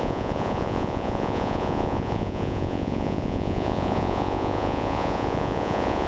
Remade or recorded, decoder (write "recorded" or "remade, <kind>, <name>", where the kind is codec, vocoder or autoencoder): remade, vocoder, Vocos